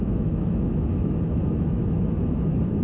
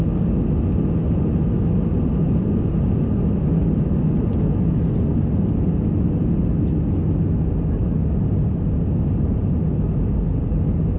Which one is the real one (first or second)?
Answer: second